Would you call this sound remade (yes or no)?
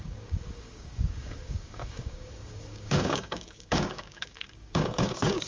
yes